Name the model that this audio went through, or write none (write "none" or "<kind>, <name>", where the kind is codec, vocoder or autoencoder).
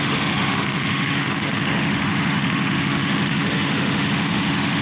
autoencoder, DAC-VAE